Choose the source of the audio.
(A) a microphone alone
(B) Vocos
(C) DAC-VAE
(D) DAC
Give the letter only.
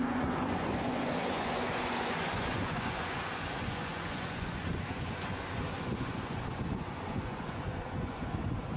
B